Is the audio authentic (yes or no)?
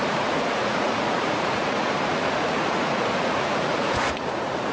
no